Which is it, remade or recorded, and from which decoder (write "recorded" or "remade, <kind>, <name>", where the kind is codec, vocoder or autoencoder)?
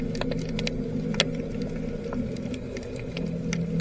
recorded